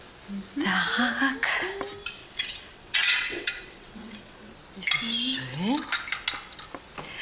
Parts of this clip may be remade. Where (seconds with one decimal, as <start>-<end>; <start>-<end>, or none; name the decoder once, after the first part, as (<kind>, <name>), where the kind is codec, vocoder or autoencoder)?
2.2-4.5 (vocoder, WaveNeXt)